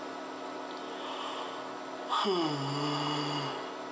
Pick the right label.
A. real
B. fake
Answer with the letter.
A